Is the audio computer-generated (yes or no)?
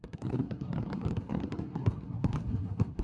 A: yes